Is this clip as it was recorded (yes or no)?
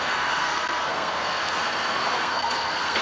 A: no